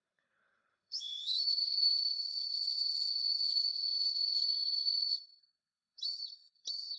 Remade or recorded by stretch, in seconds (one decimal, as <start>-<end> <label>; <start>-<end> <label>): 0.0-7.0 remade